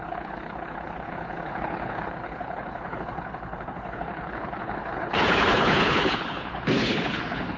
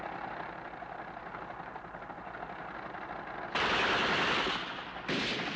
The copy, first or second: first